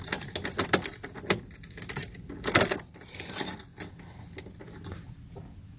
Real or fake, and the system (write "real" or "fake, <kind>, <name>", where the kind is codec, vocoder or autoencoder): real